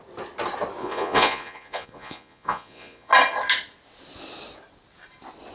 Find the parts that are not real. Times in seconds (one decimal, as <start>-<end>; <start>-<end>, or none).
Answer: 0.8-3.1